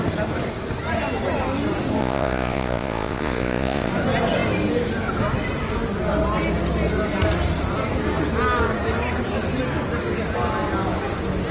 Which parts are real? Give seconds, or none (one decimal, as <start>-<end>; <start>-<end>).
0.0-2.0; 3.9-11.5